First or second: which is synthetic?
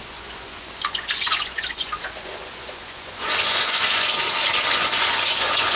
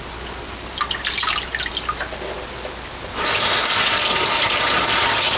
first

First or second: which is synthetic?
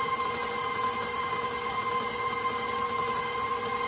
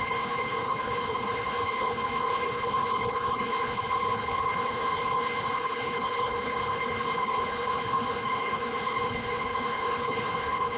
second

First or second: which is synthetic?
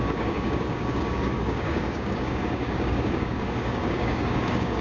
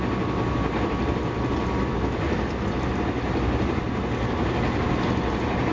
first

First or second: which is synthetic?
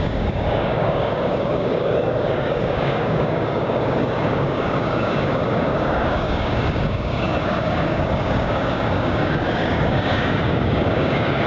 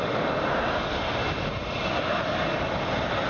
first